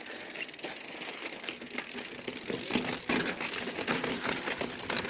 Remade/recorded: recorded